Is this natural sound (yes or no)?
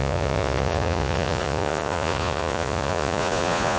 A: no